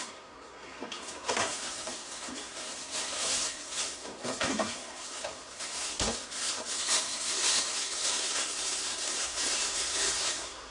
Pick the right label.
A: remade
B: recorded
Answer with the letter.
A